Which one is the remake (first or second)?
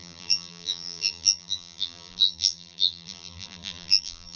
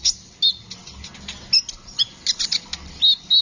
first